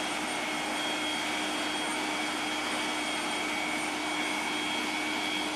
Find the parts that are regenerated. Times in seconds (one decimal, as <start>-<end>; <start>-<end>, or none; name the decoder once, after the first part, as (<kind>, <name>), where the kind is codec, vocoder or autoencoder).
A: none